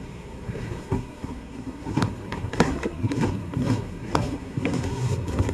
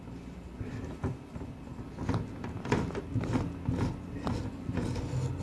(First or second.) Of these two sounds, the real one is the second